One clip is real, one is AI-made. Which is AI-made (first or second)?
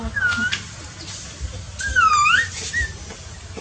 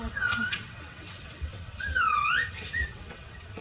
second